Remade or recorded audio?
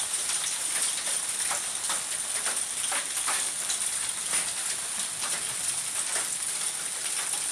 recorded